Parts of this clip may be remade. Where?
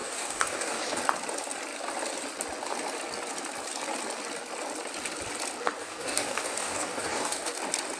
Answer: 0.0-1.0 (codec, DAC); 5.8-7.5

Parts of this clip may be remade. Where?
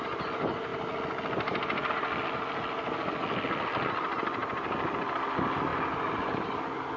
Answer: none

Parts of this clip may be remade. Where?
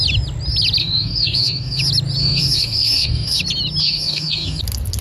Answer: 0.8-1.8 (codec, DAC); 2.2-3.4; 3.8-4.6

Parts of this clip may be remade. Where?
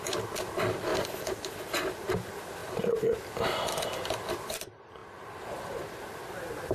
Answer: none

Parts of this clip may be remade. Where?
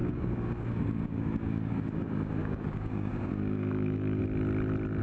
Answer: 0.0-4.2 (codec, DAC)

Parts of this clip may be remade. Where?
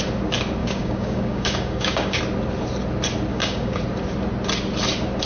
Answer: 0.6-2.2 (codec, DAC); 3.3-3.8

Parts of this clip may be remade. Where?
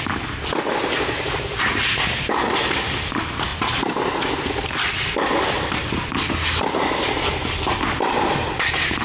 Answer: none